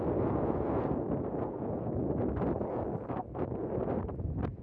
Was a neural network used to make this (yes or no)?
no